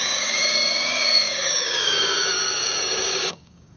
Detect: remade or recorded remade